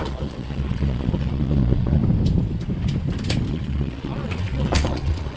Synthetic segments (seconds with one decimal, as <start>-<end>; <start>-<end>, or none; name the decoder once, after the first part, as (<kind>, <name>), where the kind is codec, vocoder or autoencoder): 0.0-2.0 (vocoder, Vocos); 3.5-5.4